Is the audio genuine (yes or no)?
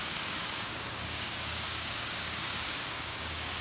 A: no